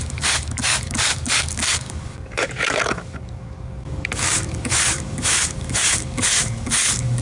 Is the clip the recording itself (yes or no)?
no